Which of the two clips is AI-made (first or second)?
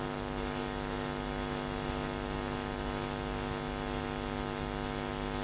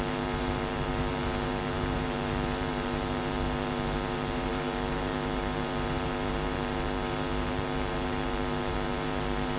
second